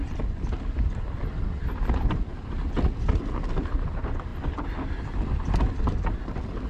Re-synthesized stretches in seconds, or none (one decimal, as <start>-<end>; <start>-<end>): none